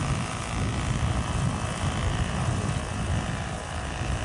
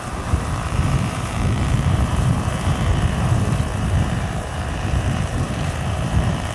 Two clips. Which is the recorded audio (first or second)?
first